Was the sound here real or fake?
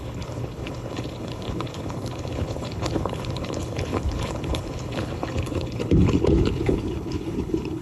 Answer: fake